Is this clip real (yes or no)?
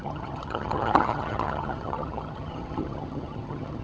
no